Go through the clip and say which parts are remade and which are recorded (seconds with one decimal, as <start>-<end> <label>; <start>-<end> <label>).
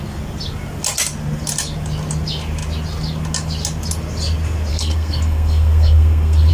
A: 0.0-4.7 recorded; 4.7-6.5 remade